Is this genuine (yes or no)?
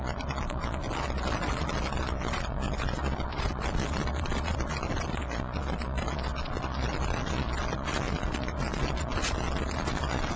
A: no